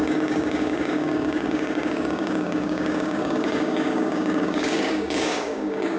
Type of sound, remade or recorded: remade